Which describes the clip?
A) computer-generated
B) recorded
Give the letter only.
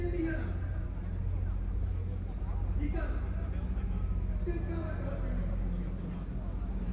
B